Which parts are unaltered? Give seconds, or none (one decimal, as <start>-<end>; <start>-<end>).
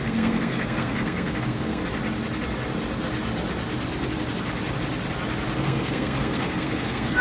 1.8-5.6